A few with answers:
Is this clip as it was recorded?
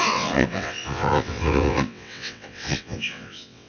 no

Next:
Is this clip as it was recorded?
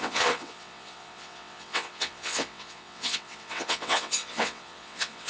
no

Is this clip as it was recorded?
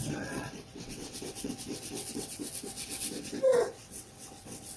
no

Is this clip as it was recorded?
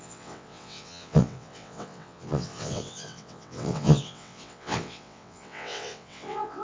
no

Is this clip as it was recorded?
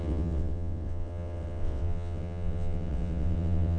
no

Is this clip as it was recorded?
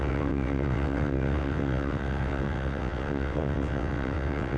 no